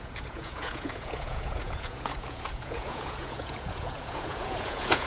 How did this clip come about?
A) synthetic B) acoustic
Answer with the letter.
A